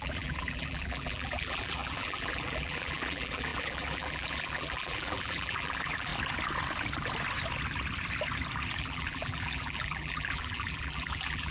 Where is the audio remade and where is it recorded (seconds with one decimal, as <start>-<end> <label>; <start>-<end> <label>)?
0.0-6.1 remade; 6.1-8.8 recorded; 8.8-11.5 remade